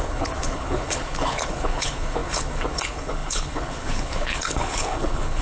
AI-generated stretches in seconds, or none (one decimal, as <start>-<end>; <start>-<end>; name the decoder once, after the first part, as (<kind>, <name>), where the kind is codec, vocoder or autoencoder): 0.0-5.4 (codec, HILCodec)